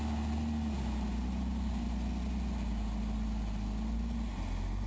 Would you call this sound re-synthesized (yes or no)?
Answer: no